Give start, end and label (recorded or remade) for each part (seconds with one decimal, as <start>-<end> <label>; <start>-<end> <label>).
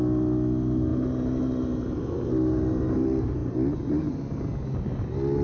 0.0-5.4 recorded